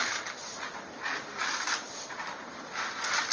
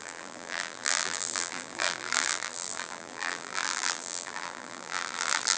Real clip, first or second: first